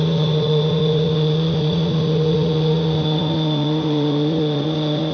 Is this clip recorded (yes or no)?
no